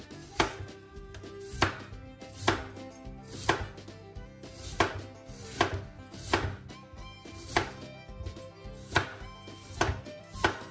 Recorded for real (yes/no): yes